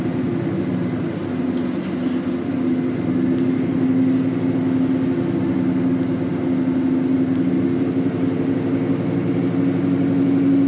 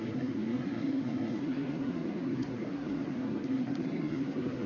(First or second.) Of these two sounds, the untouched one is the first